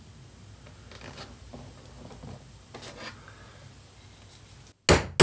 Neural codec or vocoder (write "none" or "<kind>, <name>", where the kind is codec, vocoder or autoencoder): none